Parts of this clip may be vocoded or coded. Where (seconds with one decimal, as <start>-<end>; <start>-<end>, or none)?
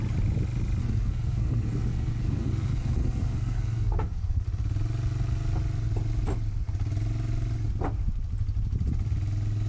0.8-4.4